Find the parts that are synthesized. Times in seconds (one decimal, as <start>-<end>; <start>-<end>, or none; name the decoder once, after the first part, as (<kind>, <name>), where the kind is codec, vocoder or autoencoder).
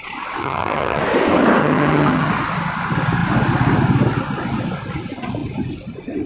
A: 0.4-1.0 (vocoder, HiFi-GAN); 1.6-2.3